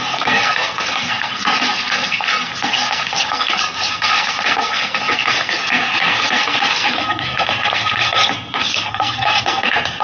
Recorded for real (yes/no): no